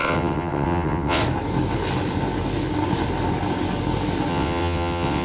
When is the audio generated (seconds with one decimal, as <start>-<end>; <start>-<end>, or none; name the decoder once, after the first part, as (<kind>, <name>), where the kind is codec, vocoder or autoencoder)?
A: 0.0-1.2 (vocoder, WaveNeXt); 4.3-5.2